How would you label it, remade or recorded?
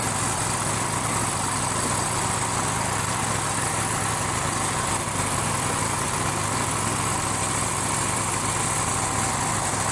recorded